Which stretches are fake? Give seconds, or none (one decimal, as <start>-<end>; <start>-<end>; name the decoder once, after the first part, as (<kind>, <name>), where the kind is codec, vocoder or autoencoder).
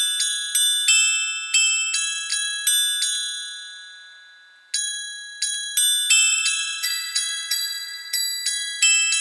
6.3-8.1 (vocoder, Vocos)